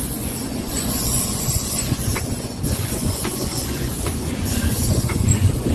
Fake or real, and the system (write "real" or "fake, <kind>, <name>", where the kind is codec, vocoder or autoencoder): fake, vocoder, Vocos